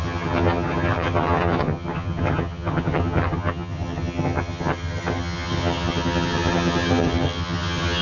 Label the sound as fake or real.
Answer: fake